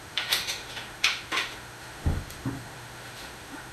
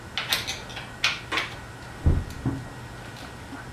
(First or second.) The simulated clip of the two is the first